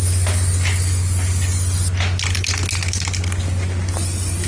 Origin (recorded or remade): recorded